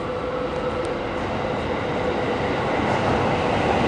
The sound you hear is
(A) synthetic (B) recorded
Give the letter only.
B